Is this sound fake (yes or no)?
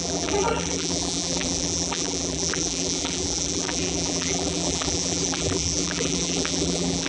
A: yes